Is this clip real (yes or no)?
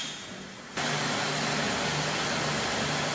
yes